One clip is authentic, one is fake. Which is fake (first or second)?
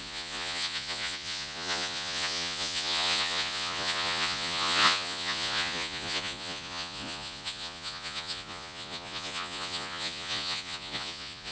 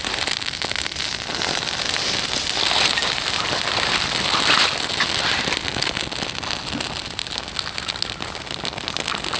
first